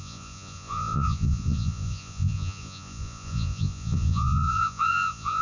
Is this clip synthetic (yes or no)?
yes